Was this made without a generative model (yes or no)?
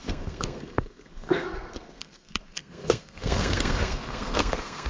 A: no